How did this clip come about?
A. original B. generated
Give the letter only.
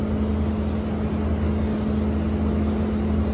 A